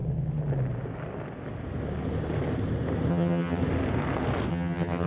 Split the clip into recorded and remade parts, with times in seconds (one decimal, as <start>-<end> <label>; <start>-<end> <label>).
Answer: 0.0-3.1 recorded; 3.1-3.6 remade; 3.6-4.5 recorded; 4.5-5.1 remade